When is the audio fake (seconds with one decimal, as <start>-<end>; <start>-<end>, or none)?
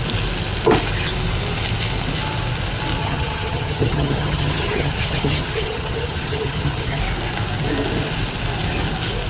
3.0-7.0